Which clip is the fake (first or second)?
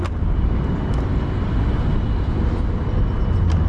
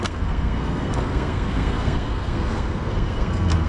second